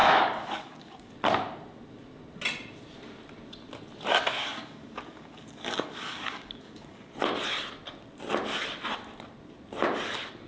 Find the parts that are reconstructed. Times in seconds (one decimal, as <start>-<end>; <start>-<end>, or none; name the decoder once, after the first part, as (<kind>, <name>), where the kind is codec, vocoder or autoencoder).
0.0-1.1 (codec, DAC); 4.4-7.2

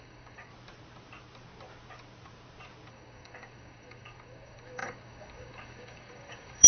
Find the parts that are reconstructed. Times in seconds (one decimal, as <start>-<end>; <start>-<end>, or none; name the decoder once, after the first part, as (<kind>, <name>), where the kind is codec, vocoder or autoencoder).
0.0-0.5 (codec, DAC); 2.9-6.7